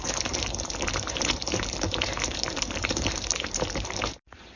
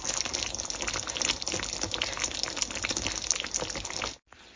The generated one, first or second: first